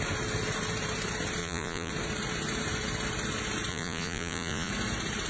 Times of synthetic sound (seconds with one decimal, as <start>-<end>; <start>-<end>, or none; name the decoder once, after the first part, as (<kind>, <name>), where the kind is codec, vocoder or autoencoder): 1.4-1.9 (vocoder, Vocos); 3.7-4.7